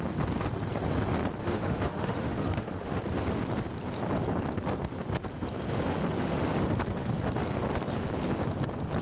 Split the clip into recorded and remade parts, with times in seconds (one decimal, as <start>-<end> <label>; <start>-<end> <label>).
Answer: 0.0-1.4 recorded; 1.4-3.0 remade; 3.0-9.0 recorded